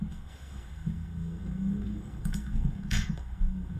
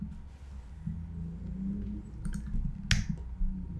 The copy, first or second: first